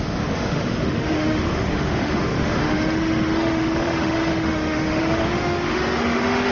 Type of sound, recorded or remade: remade